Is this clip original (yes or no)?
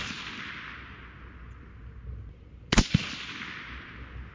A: yes